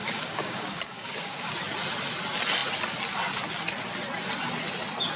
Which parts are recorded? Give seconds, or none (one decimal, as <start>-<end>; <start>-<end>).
1.5-5.2